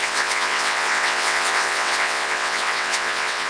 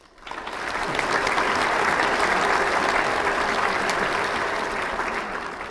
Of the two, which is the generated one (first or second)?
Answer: first